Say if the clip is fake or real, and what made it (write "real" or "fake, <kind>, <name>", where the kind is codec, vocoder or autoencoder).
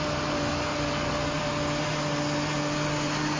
real